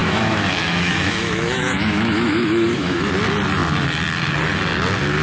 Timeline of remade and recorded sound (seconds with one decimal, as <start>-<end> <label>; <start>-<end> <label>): 0.0-3.1 remade; 3.1-5.2 recorded